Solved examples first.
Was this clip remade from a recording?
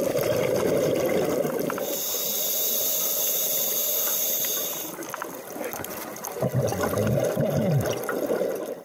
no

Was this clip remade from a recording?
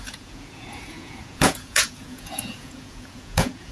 yes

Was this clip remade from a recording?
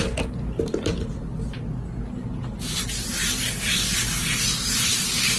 no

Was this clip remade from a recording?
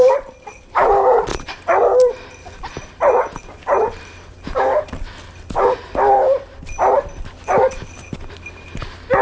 no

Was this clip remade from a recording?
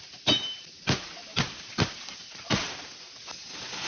no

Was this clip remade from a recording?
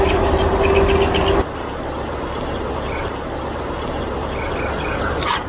no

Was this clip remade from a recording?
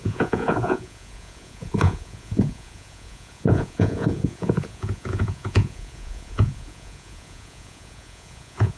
yes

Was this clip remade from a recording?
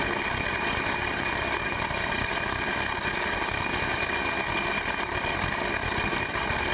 no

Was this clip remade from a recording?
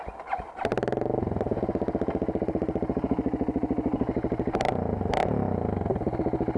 no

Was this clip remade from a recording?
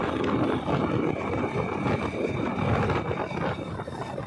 no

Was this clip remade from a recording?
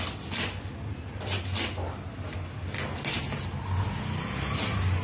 no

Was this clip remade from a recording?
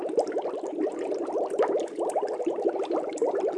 no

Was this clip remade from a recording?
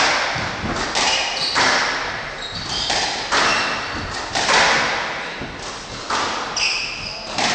no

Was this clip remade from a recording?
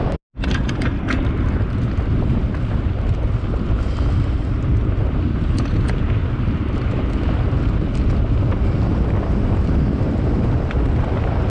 no